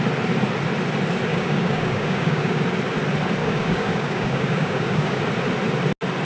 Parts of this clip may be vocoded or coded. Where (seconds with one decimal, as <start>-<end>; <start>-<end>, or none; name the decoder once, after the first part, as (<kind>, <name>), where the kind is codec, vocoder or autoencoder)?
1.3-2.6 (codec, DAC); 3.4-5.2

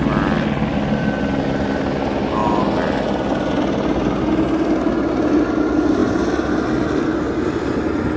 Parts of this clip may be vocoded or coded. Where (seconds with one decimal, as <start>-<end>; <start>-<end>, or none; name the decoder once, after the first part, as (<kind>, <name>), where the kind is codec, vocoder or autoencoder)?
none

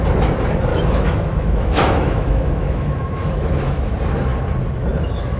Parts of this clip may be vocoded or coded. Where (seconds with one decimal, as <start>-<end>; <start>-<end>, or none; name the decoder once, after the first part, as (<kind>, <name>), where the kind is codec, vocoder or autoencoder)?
0.7-3.9 (autoencoder, DAC-VAE)

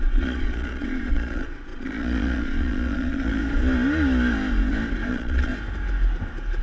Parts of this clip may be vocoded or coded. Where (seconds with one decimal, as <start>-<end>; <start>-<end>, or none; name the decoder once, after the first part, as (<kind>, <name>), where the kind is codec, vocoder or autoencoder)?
0.0-3.4 (vocoder, Vocos); 5.1-5.5

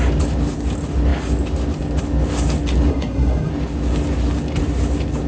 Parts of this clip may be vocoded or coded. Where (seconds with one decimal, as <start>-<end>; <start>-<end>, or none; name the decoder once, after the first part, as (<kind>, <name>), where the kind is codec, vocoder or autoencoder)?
2.9-3.5 (codec, SNAC)